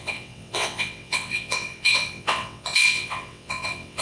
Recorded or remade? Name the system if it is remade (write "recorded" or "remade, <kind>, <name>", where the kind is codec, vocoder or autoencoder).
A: remade, vocoder, WaveNeXt